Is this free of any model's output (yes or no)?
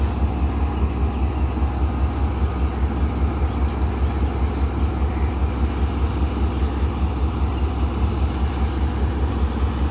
yes